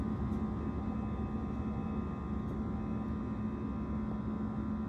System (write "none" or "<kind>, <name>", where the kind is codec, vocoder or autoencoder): none